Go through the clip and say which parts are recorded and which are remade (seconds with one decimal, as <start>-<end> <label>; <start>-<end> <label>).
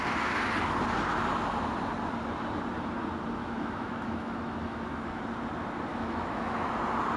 0.0-3.4 recorded; 3.4-5.2 remade; 5.2-5.9 recorded; 5.9-6.7 remade; 6.7-7.2 recorded